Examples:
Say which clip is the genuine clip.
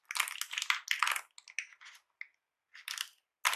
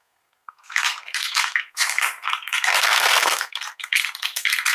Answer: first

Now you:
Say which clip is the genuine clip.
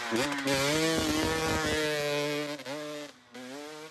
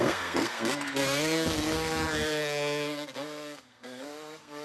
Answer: first